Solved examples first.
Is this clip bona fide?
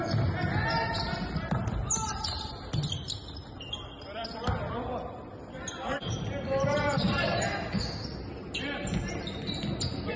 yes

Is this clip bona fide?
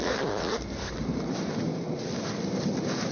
no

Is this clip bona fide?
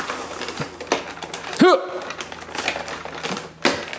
yes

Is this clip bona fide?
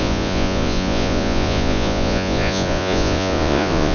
no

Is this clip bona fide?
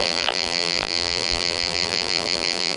no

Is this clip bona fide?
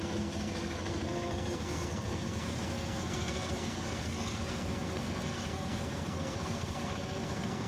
no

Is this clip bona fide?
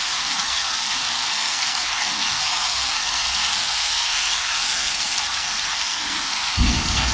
no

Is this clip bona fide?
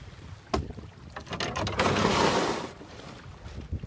yes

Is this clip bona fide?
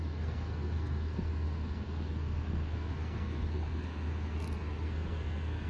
no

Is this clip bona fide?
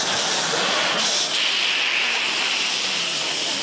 yes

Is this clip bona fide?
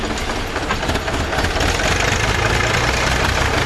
yes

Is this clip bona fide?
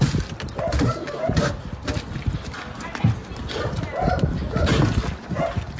yes